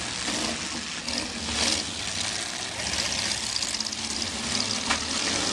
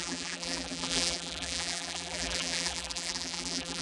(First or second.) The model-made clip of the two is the second